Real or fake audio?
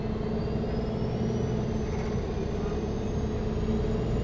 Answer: real